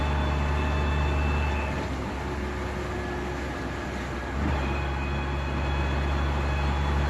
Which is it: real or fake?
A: real